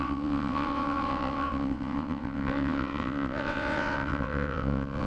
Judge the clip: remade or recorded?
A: remade